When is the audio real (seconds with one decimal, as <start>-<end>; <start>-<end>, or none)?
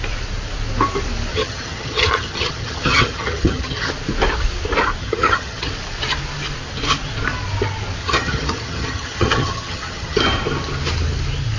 0.0-1.3; 3.9-5.0; 5.7-8.0; 10.2-11.6